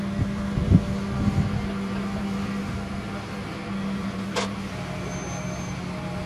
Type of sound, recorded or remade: recorded